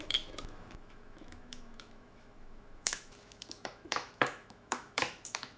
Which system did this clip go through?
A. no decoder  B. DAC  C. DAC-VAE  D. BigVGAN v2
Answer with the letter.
C